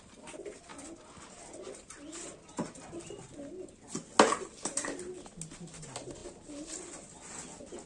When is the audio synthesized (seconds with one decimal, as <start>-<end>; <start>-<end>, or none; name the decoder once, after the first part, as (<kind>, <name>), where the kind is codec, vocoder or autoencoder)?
none